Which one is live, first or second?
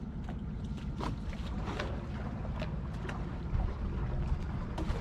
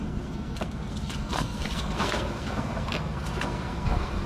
first